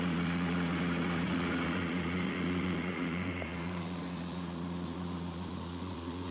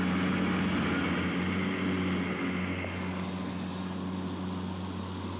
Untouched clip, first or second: second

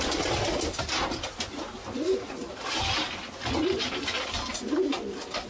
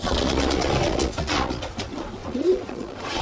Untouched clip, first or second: first